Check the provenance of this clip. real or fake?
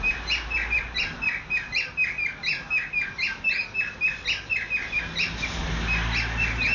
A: real